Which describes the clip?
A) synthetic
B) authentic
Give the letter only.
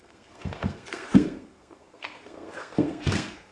A